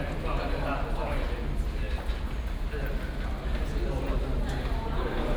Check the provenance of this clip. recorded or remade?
recorded